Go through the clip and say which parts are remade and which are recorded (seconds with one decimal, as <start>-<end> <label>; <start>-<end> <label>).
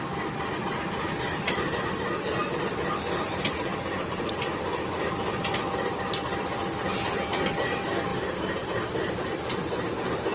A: 0.0-2.4 recorded; 2.4-3.6 remade; 3.6-4.5 recorded; 4.5-5.6 remade; 5.6-8.1 recorded; 8.1-9.1 remade; 9.1-10.3 recorded